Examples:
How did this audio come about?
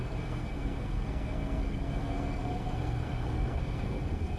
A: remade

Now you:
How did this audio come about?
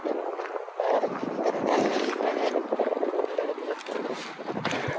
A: recorded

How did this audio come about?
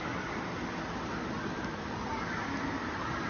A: recorded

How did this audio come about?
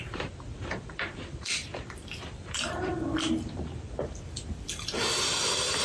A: remade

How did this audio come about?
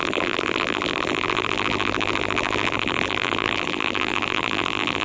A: remade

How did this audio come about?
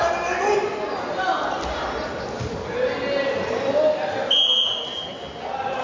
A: recorded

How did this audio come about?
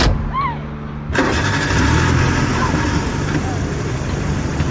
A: recorded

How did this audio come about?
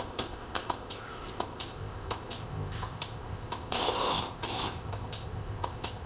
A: remade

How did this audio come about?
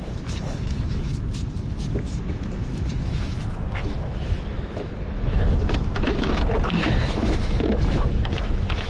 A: remade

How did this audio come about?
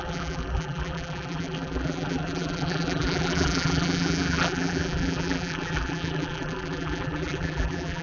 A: remade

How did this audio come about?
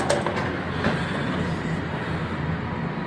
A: recorded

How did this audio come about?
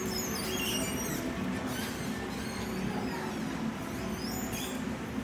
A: recorded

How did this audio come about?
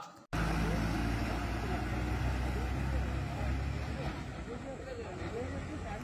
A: recorded